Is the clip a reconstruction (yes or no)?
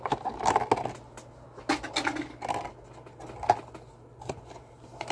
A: no